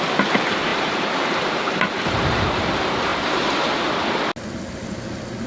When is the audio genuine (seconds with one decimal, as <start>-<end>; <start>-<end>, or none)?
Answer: 0.0-0.7; 2.6-3.1; 3.7-5.5